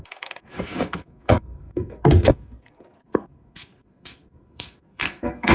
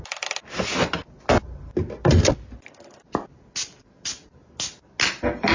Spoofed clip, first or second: first